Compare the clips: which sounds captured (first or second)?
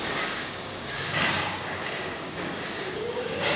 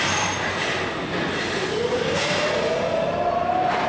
second